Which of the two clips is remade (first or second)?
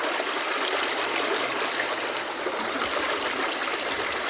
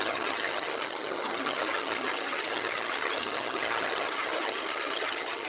second